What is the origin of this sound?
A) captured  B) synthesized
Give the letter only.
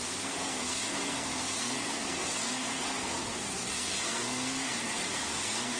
B